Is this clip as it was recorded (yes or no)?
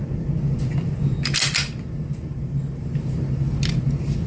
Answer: yes